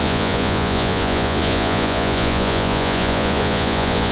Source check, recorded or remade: remade